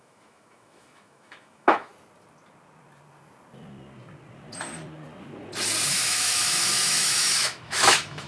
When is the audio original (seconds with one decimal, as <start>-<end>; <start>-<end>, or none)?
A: 1.9-5.9